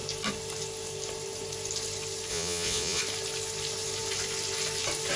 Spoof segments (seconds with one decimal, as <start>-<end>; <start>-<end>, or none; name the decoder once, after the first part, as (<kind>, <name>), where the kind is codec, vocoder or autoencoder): 2.3-3.0 (vocoder, Vocos)

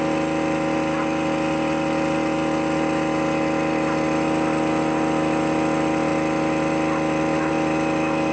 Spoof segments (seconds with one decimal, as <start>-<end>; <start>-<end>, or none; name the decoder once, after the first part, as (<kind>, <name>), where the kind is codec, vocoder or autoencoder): none

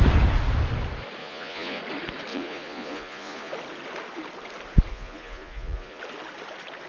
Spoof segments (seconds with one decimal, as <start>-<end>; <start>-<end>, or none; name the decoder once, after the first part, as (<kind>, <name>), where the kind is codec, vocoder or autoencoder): 1.2-1.8 (vocoder, Vocos); 2.3-3.5; 4.9-6.0

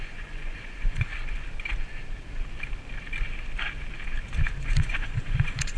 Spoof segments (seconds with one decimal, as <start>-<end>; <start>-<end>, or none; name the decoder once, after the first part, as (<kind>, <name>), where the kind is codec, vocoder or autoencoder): 0.0-1.1 (vocoder, Vocos); 4.6-5.8